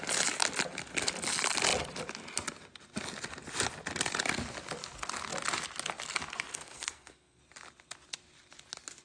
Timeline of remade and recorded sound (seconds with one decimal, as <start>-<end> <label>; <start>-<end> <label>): 0.0-6.5 recorded; 6.5-7.4 remade; 7.4-9.0 recorded